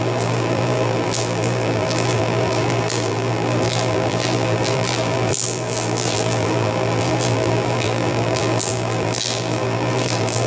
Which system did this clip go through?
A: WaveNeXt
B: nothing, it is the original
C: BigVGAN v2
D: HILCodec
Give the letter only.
C